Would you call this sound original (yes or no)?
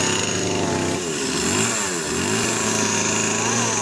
yes